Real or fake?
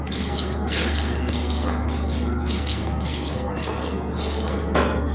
fake